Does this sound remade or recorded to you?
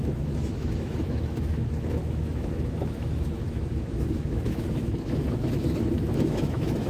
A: remade